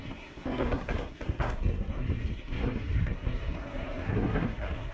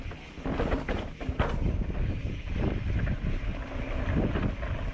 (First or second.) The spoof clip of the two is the first